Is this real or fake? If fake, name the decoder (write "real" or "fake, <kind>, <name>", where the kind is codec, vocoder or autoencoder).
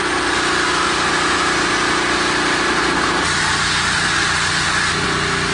real